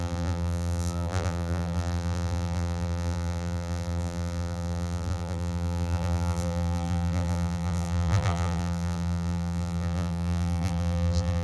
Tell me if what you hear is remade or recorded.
remade